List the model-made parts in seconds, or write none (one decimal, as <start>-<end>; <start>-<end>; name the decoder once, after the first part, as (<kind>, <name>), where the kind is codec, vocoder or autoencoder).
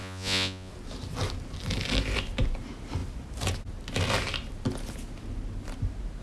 0.0-0.7 (vocoder, Vocos)